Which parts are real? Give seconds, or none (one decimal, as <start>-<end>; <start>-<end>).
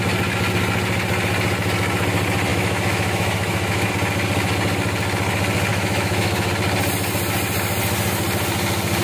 0.0-2.5; 3.9-5.7; 6.5-9.0